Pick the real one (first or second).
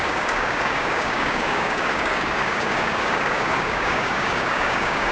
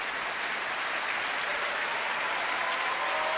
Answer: second